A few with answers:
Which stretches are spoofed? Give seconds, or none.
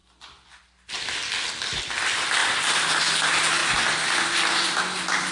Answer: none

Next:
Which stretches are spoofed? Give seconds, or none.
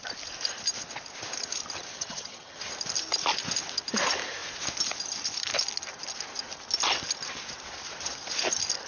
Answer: 1.9-2.7 (vocoder, HiFi-GAN)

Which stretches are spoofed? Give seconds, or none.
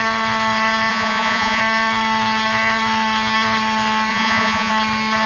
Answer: 0.9-1.6 (vocoder, Vocos); 4.1-4.7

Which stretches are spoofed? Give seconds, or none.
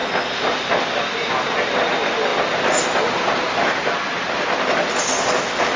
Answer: none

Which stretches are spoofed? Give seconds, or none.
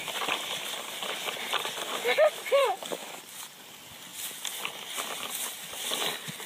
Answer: 2.6-3.2 (codec, DAC)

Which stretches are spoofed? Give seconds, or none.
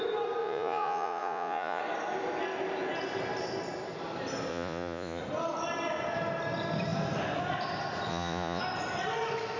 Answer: 0.4-1.8 (vocoder, Vocos); 4.5-5.2; 8.1-8.6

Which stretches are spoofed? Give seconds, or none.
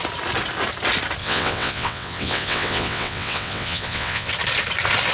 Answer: 1.2-4.3 (vocoder, WaveNeXt)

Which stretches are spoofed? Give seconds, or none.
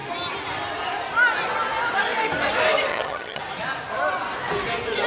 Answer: 2.9-3.4 (vocoder, HiFi-GAN)